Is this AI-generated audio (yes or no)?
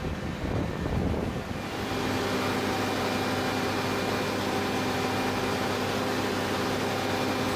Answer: no